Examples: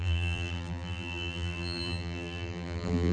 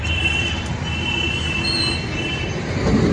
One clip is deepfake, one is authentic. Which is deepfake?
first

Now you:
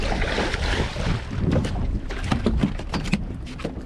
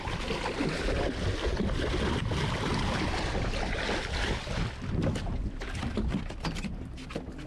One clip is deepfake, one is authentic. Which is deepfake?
first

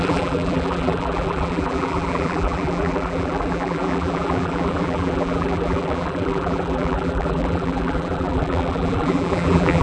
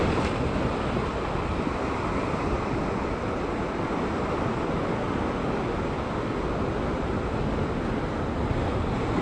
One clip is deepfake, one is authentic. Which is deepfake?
first